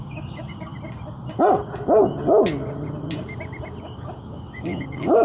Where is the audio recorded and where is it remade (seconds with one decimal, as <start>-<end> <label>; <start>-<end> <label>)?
0.0-0.7 remade; 0.7-3.8 recorded; 3.8-5.2 remade